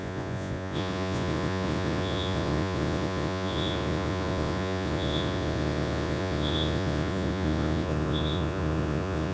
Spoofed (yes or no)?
yes